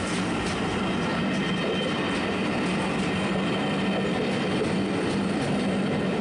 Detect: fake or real real